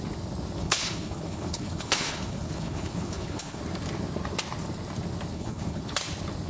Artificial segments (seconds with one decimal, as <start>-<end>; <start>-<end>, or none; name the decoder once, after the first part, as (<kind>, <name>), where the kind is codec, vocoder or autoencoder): 0.6-3.6 (codec, HILCodec); 5.3-5.9